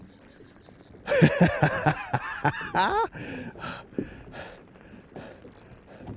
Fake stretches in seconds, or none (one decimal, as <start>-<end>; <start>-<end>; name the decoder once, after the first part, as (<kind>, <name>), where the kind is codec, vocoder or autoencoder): none